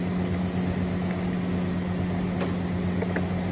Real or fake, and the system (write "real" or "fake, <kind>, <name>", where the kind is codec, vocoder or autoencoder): real